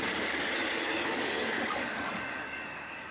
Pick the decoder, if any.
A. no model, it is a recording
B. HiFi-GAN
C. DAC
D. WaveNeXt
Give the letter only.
C